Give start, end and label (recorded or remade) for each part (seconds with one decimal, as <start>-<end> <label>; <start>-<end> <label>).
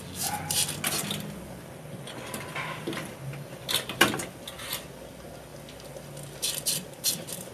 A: 0.0-7.5 recorded